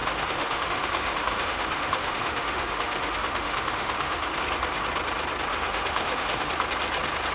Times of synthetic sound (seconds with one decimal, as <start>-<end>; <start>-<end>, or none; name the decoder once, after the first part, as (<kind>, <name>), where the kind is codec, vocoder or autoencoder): 0.0-4.4 (autoencoder, DAC-VAE); 5.5-6.5